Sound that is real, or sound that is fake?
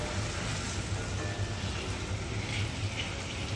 real